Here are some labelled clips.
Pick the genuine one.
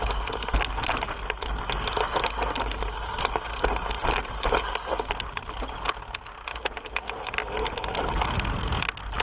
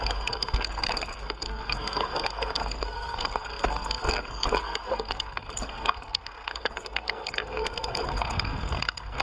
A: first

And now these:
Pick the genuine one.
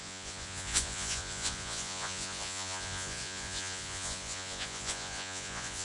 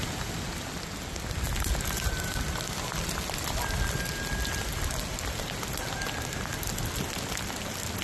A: second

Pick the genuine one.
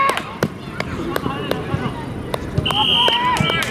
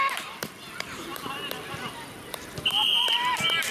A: first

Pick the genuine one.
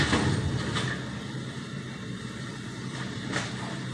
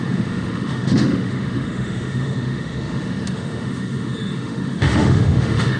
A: first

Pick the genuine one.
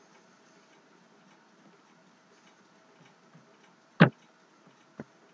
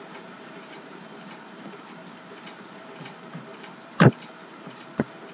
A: first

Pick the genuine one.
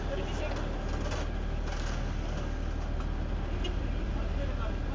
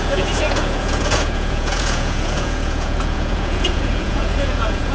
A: first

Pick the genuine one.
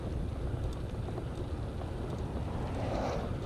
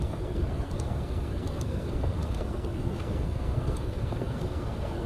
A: first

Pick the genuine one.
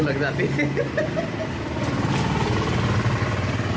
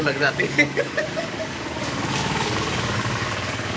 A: first